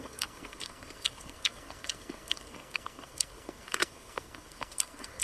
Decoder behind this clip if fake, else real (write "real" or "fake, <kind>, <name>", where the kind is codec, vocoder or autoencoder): fake, codec, SNAC